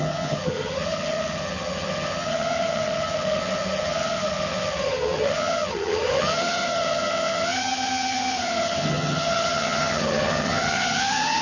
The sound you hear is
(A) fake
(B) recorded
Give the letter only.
A